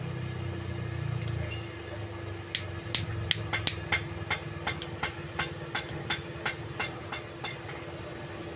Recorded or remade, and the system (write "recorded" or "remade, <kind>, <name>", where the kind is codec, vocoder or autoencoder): recorded